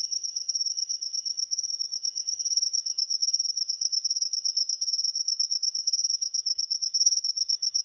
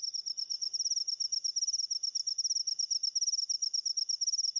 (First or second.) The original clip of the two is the second